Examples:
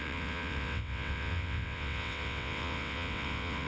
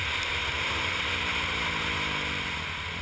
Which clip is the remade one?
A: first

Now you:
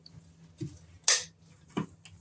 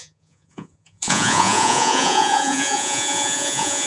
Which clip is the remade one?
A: second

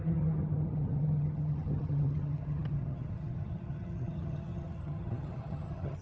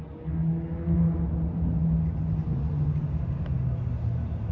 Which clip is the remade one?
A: first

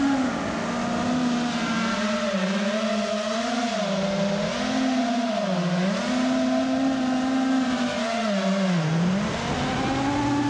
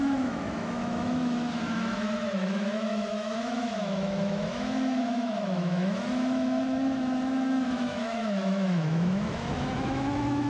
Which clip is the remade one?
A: second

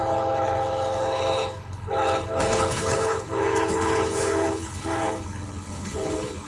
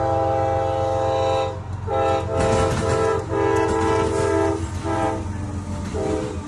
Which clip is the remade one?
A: first